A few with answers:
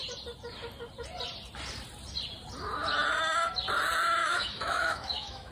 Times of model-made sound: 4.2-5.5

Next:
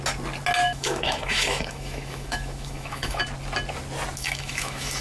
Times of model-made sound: 0.6-3.2; 4.2-5.0